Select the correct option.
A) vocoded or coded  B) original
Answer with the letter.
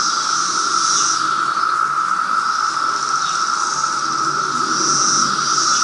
B